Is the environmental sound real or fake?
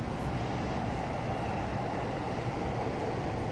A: real